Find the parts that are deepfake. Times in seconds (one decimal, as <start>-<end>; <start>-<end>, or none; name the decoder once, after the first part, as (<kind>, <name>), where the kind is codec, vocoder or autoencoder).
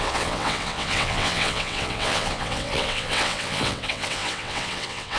0.0-5.2 (vocoder, WaveNeXt)